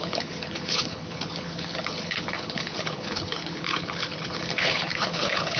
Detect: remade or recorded remade